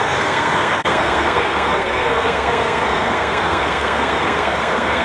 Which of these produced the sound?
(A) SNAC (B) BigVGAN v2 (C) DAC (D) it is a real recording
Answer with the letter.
A